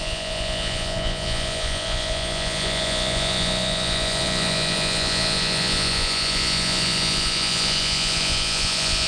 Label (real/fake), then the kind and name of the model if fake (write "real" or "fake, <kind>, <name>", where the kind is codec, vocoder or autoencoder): fake, vocoder, Vocos